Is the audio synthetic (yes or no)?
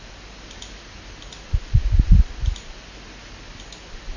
no